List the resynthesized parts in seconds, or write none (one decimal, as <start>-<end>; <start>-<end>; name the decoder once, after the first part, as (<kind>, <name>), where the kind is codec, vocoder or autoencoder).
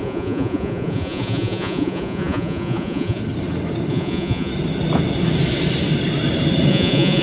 0.0-3.2 (vocoder, Vocos); 3.9-4.5; 6.7-7.2